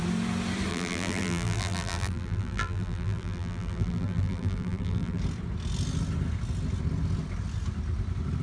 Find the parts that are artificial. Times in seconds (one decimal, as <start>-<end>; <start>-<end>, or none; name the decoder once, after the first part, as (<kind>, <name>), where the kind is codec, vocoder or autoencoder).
0.7-5.2 (vocoder, BigVGAN v2)